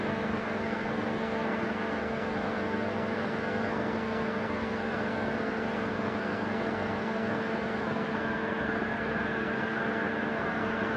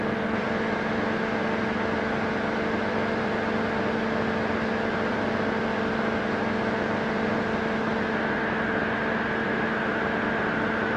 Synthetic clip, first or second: first